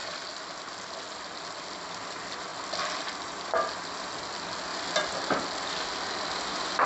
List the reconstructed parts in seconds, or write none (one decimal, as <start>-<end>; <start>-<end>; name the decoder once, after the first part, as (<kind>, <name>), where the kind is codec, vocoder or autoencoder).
none